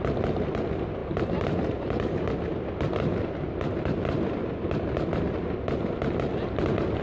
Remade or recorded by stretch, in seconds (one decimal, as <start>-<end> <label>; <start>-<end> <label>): 0.0-7.0 recorded